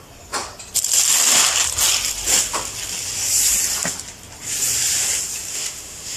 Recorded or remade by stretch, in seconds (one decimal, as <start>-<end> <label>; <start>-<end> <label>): 0.0-5.5 recorded; 5.5-6.2 remade